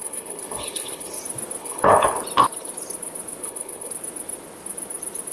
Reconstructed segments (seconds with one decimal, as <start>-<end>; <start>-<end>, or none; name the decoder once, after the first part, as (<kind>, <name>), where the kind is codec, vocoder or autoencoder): 0.0-1.2 (codec, HILCodec); 1.6-2.2; 3.4-3.9